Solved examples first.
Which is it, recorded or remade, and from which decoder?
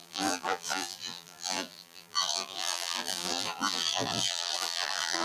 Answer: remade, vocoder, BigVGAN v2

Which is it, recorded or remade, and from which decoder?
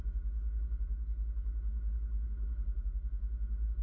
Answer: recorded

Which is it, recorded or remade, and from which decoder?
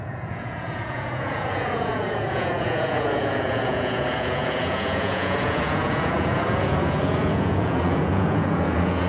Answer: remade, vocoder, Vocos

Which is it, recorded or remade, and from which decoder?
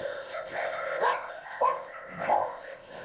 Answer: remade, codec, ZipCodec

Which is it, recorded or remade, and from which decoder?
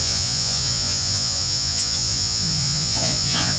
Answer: remade, vocoder, Vocos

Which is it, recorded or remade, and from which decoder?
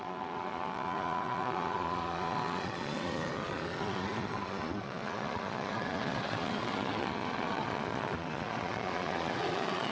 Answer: remade, vocoder, Vocos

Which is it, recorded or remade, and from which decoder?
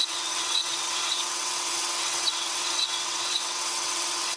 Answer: remade, vocoder, WaveNeXt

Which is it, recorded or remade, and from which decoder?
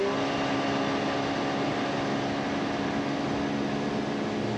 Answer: recorded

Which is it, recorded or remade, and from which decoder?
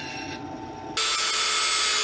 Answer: recorded